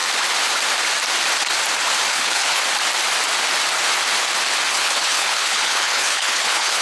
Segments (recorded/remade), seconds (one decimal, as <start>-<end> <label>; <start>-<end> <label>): 0.0-2.1 recorded; 2.1-2.6 remade; 2.6-4.7 recorded; 4.7-6.8 remade